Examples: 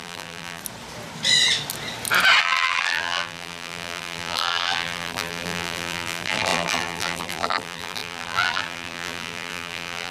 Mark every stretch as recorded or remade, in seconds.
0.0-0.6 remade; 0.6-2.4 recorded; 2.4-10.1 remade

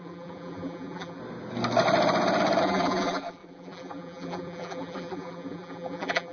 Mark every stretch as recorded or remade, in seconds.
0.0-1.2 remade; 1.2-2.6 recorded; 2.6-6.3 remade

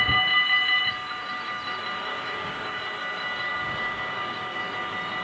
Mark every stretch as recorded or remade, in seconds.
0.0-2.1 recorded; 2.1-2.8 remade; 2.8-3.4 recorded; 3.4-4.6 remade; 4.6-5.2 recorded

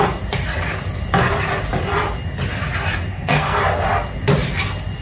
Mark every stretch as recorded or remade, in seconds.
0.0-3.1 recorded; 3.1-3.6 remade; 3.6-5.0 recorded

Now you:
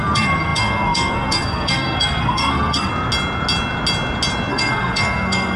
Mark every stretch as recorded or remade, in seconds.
0.0-2.9 remade; 2.9-4.5 recorded; 4.5-5.6 remade

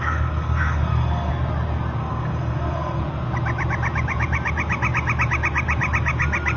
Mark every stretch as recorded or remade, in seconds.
0.0-1.3 remade; 1.3-2.0 recorded; 2.0-3.0 remade; 3.0-6.6 recorded